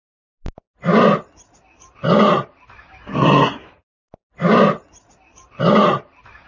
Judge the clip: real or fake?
real